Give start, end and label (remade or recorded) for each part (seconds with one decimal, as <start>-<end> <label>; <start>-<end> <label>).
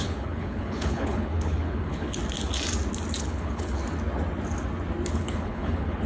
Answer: 0.0-2.2 remade; 2.2-3.2 recorded; 3.2-3.8 remade; 3.8-5.1 recorded; 5.1-6.1 remade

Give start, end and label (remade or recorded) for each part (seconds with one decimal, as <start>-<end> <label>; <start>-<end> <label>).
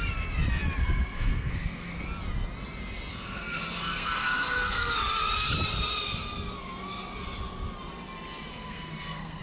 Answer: 0.0-0.8 recorded; 0.8-2.0 remade; 2.0-3.1 recorded; 3.1-5.0 remade; 5.0-8.5 recorded; 8.5-9.4 remade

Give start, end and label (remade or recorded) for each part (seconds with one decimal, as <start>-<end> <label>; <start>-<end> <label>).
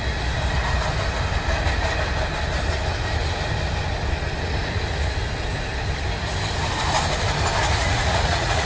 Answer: 0.0-7.8 recorded; 7.8-8.7 remade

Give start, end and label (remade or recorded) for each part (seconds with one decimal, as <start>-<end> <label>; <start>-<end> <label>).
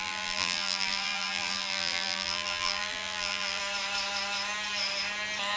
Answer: 0.0-3.6 remade; 3.6-5.6 recorded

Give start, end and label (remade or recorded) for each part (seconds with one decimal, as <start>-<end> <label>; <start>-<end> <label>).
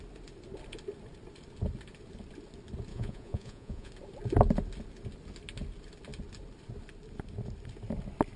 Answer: 0.0-2.9 recorded; 2.9-3.9 remade; 3.9-8.4 recorded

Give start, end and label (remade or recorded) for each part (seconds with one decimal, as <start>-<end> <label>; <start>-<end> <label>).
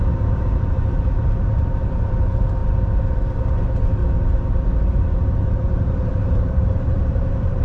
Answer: 0.0-2.6 remade; 2.6-3.6 recorded; 3.6-4.0 remade; 4.0-4.9 recorded; 4.9-7.6 remade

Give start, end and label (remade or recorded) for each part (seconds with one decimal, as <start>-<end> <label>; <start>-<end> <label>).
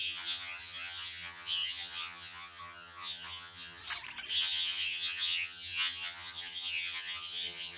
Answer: 0.0-3.8 remade; 3.8-4.3 recorded; 4.3-7.8 remade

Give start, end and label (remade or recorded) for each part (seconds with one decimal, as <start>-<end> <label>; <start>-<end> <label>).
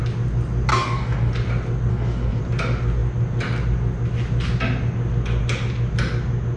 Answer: 0.0-0.7 recorded; 0.7-1.3 remade; 1.3-1.9 recorded; 1.9-2.4 remade; 2.4-6.6 recorded